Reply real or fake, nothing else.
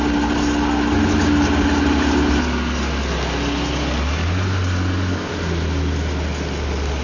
real